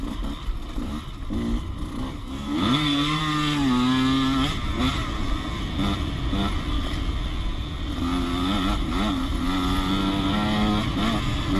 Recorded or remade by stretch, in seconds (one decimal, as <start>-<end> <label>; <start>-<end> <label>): 0.0-2.2 recorded; 2.2-3.2 remade; 3.2-11.6 recorded